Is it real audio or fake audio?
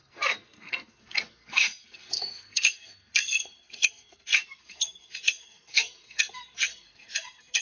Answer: fake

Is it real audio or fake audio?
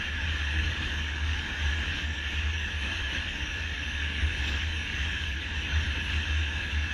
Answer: fake